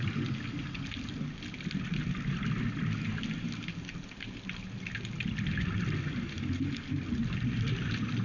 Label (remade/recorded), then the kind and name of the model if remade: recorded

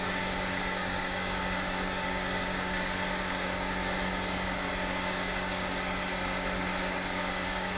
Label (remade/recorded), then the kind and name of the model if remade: remade, codec, DAC